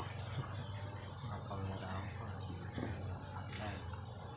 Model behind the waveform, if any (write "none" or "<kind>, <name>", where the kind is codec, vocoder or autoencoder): none